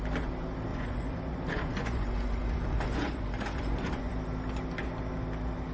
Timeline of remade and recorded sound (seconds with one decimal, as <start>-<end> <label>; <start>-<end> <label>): 0.0-0.7 recorded; 0.7-4.1 remade; 4.1-5.7 recorded